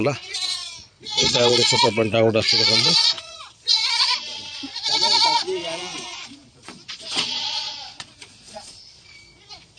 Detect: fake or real fake